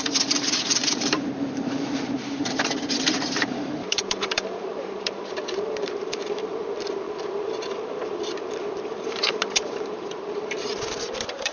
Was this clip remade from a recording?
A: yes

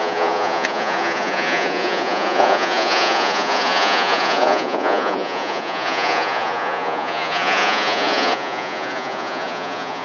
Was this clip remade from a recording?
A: yes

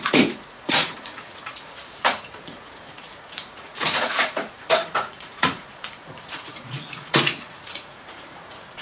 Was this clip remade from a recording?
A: yes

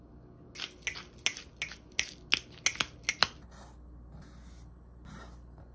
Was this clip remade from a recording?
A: no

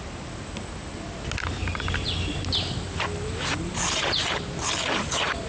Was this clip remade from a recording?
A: no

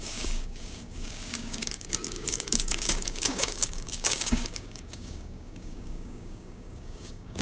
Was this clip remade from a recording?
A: yes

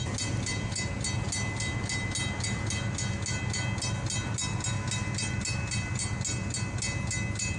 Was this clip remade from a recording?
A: no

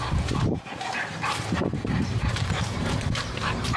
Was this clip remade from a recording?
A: yes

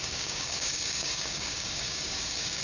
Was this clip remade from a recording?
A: yes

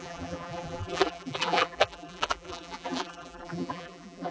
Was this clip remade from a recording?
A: yes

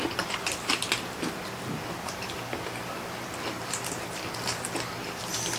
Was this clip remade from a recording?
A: no